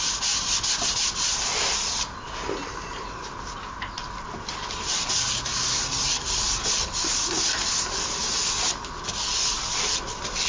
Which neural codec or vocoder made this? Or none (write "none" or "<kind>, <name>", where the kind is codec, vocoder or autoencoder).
none